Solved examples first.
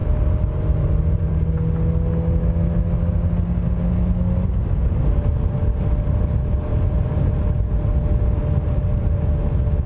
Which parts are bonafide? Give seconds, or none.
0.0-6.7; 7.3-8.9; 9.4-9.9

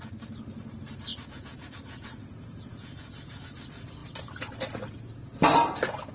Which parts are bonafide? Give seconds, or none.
0.0-1.1; 3.4-6.1